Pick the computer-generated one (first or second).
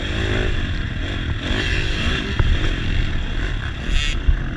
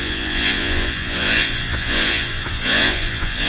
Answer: second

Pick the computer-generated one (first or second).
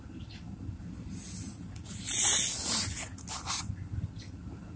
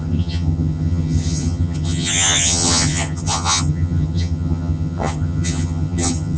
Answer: second